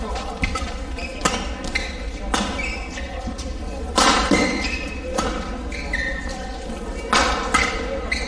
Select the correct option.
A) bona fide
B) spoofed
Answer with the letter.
A